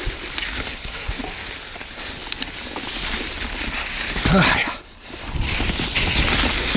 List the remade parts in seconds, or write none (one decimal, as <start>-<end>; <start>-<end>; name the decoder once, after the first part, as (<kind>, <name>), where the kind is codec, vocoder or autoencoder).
0.7-1.2 (codec, SNAC)